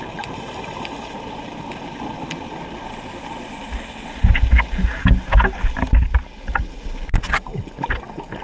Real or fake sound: real